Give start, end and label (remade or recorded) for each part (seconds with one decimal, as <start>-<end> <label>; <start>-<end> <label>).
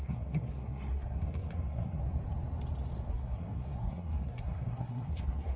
0.0-2.0 remade; 2.0-3.1 recorded; 3.1-5.6 remade